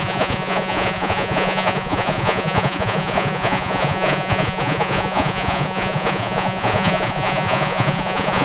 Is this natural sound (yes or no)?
no